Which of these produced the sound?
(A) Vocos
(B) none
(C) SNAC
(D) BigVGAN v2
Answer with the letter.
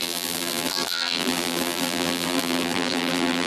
D